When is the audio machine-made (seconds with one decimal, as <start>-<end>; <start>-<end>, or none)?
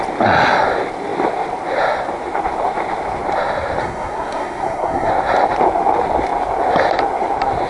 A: 3.8-5.1